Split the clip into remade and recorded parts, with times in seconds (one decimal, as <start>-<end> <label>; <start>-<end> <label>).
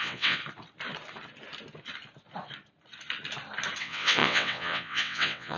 0.0-0.4 remade; 0.4-3.8 recorded; 3.8-5.6 remade